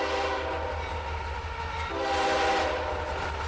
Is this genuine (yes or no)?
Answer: yes